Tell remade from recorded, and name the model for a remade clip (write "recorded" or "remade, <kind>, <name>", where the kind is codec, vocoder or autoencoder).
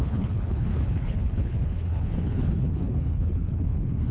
remade, codec, HILCodec